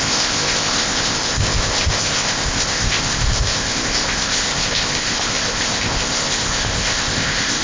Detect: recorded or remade remade